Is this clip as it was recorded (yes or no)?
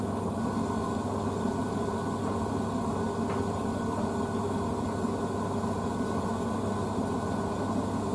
yes